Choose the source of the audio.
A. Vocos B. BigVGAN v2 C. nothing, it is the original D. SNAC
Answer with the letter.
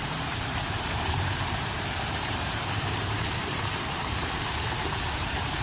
B